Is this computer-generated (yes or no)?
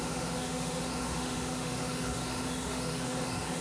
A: yes